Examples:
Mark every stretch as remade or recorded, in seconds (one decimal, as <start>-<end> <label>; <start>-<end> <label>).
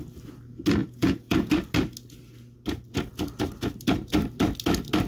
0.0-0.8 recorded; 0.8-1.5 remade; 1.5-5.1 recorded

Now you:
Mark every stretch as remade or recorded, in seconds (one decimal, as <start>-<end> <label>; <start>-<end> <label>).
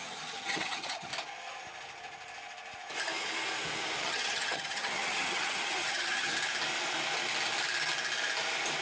0.0-1.1 remade; 1.1-4.0 recorded; 4.0-6.3 remade; 6.3-8.8 recorded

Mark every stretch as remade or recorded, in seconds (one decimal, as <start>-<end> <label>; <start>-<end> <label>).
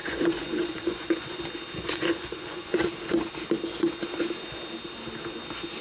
0.0-1.4 remade; 1.4-1.8 recorded; 1.8-2.9 remade; 2.9-5.8 recorded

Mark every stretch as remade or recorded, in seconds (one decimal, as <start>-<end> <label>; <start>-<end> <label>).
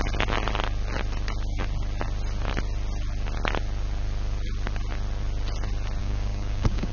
0.0-6.0 recorded; 6.0-6.9 remade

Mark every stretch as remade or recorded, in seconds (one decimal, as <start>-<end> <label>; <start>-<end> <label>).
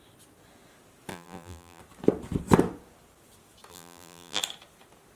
0.0-1.1 recorded; 1.1-1.8 remade; 1.8-3.7 recorded; 3.7-4.4 remade; 4.4-5.2 recorded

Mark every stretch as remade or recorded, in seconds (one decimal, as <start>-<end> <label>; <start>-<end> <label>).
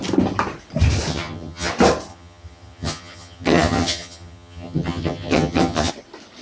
0.0-1.1 recorded; 1.1-1.7 remade; 1.7-2.1 recorded; 2.1-5.9 remade; 5.9-6.4 recorded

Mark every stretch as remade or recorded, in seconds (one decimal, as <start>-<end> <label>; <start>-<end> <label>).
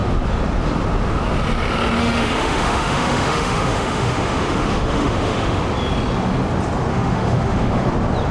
0.0-2.0 recorded; 2.0-5.6 remade; 5.6-6.9 recorded; 6.9-7.9 remade; 7.9-8.3 recorded